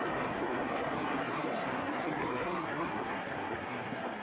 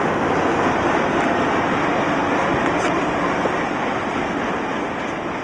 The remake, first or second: first